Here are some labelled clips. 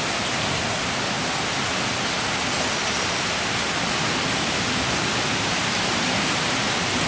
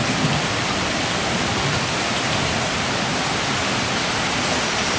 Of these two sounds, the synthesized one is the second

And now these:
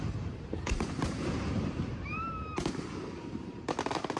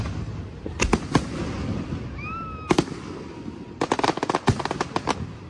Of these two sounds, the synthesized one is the first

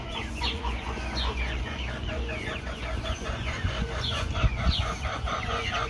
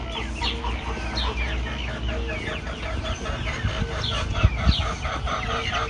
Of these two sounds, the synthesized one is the first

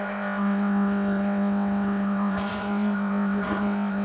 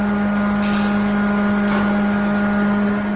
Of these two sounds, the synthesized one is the first